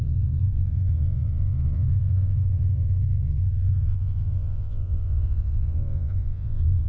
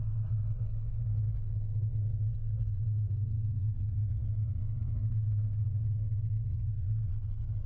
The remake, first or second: first